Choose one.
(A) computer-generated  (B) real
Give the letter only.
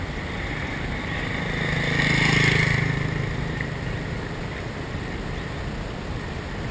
B